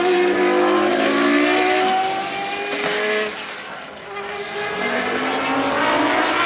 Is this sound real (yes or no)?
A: yes